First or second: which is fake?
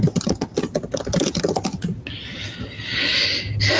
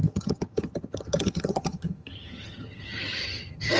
second